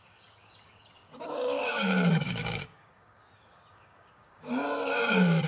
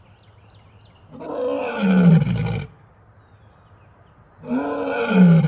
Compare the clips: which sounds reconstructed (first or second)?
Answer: first